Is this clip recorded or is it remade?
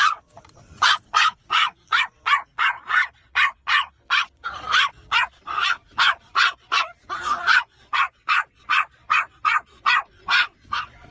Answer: remade